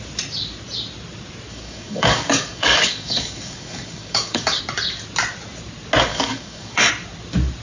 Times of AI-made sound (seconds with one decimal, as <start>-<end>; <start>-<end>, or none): 1.5-4.6; 6.1-6.9